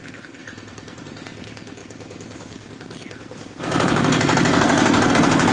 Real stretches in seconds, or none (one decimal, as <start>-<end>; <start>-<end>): none